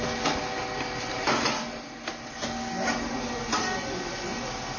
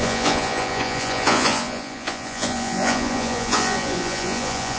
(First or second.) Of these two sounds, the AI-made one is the second